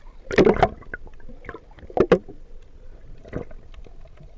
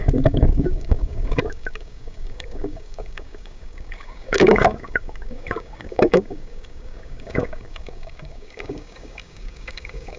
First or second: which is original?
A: first